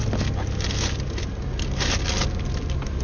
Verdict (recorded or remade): recorded